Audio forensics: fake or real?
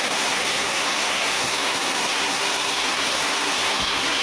fake